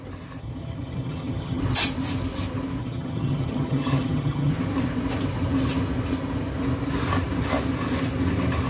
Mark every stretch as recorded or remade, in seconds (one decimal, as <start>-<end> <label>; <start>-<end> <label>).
0.0-0.4 recorded; 0.4-1.6 remade; 1.6-2.8 recorded; 2.8-4.5 remade; 4.5-8.7 recorded